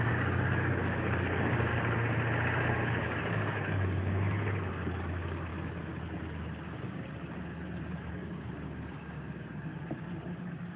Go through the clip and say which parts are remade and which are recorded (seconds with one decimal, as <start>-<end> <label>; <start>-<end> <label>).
0.0-1.7 remade; 1.7-3.0 recorded; 3.0-5.5 remade; 5.5-8.1 recorded; 8.1-9.7 remade; 9.7-10.4 recorded; 10.4-10.8 remade